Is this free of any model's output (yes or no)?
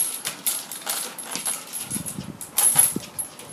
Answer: yes